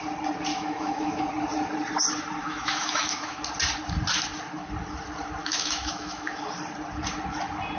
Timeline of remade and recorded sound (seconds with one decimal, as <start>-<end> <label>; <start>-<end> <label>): 0.0-0.5 recorded; 0.5-1.2 remade; 1.2-2.4 recorded; 2.4-3.4 remade; 3.4-5.4 recorded; 5.4-6.4 remade; 6.4-7.8 recorded